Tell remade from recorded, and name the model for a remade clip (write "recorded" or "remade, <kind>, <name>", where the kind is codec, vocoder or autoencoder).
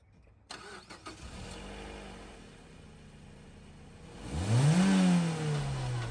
recorded